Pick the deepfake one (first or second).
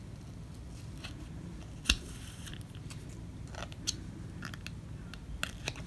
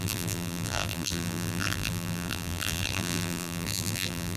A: second